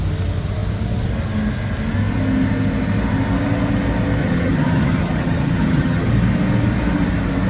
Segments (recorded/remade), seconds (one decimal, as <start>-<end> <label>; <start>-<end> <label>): 0.0-4.2 recorded; 4.2-6.1 remade; 6.1-7.5 recorded